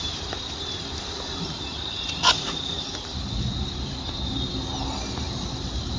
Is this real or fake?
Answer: fake